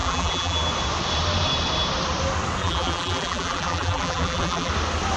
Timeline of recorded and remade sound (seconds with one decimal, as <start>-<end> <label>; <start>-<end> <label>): 0.0-0.6 remade; 0.6-2.6 recorded; 2.6-4.7 remade; 4.7-5.2 recorded